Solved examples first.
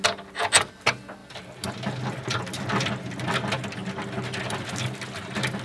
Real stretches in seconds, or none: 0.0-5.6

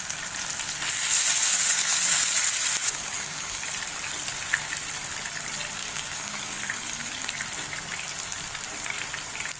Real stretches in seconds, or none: 0.0-1.5; 2.3-2.8; 3.7-5.8; 7.3-9.6

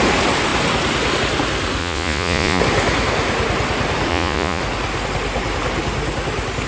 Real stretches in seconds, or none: 0.0-1.8; 2.6-4.1; 4.6-6.7

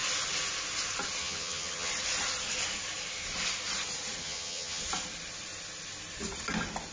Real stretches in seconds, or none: 0.0-1.2; 1.9-4.2; 4.8-6.9

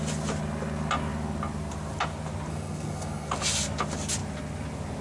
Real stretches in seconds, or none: 0.0-2.5; 3.3-5.0

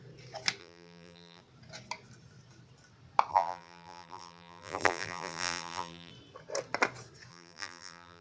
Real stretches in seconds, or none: 0.0-0.6; 1.4-3.3; 6.1-7.3

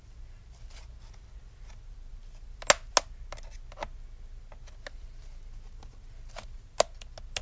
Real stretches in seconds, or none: 0.0-7.4

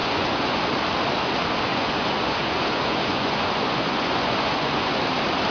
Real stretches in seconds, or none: 0.6-1.7; 5.0-5.5